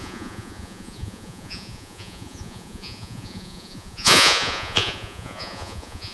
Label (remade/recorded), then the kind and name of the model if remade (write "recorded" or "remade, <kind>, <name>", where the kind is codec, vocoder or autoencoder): remade, vocoder, Vocos